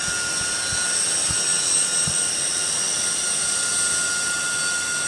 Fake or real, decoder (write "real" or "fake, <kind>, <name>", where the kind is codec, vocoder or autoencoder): real